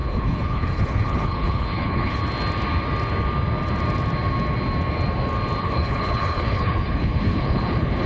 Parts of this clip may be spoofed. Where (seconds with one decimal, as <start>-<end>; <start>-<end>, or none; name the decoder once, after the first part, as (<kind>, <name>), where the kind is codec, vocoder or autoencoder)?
0.0-2.2 (codec, HILCodec); 5.6-8.1